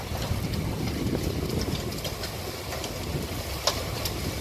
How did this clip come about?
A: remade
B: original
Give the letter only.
B